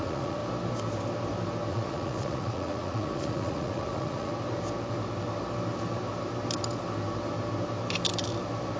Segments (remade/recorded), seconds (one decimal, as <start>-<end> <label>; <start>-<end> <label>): 0.0-0.4 remade; 0.4-1.7 recorded; 1.7-4.3 remade; 4.3-8.8 recorded

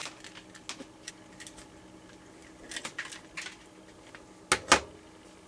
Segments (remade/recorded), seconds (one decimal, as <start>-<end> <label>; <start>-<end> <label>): 0.0-5.5 recorded

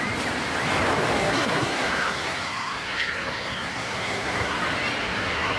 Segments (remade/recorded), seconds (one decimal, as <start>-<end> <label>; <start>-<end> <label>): 0.0-1.2 recorded; 1.2-4.6 remade; 4.6-5.0 recorded; 5.0-5.6 remade

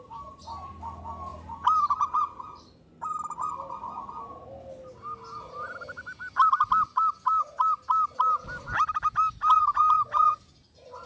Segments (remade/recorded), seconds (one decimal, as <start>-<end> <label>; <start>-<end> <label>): 0.0-1.3 recorded; 1.3-2.2 remade; 2.2-11.1 recorded

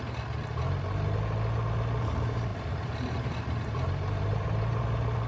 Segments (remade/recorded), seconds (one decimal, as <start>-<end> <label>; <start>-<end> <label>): 0.0-2.5 recorded; 2.5-4.8 remade; 4.8-5.3 recorded